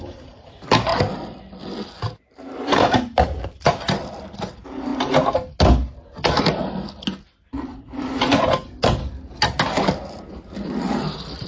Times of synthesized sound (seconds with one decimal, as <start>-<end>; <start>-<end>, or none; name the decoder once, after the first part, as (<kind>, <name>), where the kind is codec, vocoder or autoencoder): 0.0-0.9 (vocoder, BigVGAN v2); 2.6-4.9; 7.5-8.2; 9.3-11.5